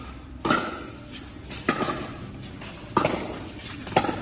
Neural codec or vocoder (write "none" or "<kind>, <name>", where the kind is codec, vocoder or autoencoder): vocoder, BigVGAN v2